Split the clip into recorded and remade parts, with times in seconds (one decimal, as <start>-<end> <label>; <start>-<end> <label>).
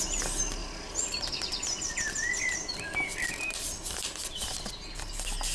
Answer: 0.0-3.1 recorded; 3.1-4.3 remade; 4.3-5.5 recorded